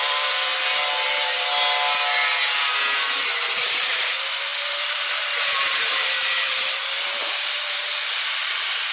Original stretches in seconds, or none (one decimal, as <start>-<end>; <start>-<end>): 0.5-3.9

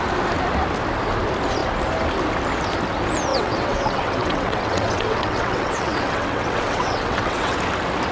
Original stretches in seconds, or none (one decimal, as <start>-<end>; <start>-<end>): 0.0-3.3; 7.6-8.1

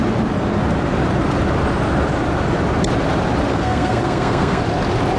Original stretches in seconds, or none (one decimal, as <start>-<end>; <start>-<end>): 0.0-3.5; 4.6-5.2

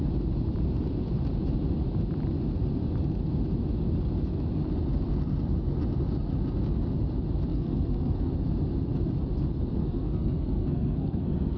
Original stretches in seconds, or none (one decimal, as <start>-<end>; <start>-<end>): 0.0-7.5; 8.3-9.8

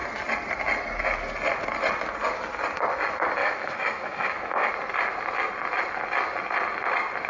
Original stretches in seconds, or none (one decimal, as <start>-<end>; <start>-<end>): 0.0-3.4; 4.7-7.3

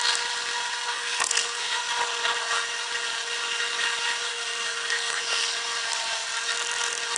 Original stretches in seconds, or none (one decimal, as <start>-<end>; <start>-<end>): 0.0-0.9; 1.8-4.3; 5.2-7.2

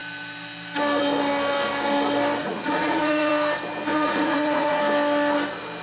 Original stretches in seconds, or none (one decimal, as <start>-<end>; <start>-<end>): 0.0-2.4; 3.3-3.9; 4.8-5.8